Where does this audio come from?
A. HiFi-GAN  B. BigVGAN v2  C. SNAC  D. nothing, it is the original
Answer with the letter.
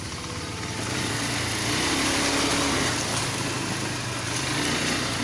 D